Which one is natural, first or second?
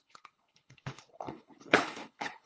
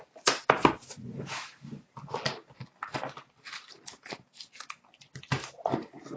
second